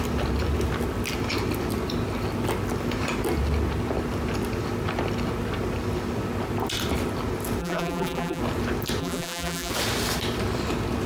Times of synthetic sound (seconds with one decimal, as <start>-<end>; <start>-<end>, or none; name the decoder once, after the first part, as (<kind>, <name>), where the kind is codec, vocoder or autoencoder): 7.6-8.4 (vocoder, BigVGAN v2); 9.0-9.7